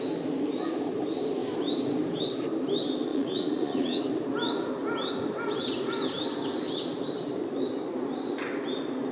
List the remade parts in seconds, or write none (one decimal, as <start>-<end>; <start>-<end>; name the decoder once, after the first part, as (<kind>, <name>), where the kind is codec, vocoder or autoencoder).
3.1-4.0 (vocoder, Vocos)